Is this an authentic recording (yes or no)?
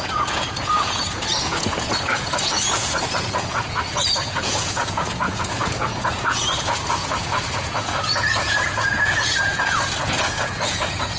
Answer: no